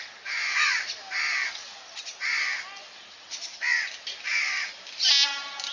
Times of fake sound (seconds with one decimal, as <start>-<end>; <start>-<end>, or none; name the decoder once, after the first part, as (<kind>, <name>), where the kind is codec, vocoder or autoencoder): none